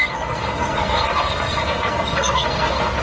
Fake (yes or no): yes